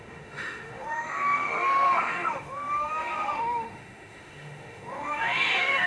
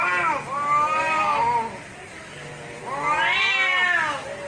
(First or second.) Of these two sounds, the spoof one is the first